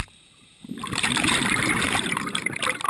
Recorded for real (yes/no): no